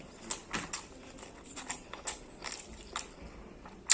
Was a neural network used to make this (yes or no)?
no